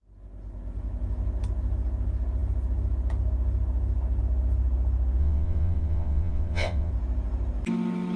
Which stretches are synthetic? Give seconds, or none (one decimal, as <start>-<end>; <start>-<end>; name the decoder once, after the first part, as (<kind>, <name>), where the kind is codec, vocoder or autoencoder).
5.2-6.9 (vocoder, WaveNeXt)